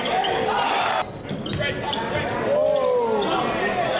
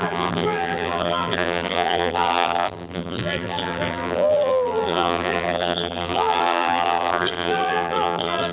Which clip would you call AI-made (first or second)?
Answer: second